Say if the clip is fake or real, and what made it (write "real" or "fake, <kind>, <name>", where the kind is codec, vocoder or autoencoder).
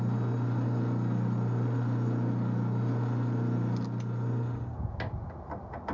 real